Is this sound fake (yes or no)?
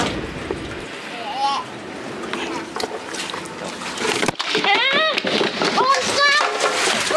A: no